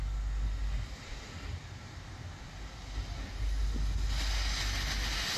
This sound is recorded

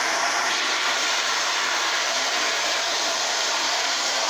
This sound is remade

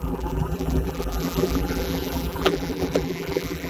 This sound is remade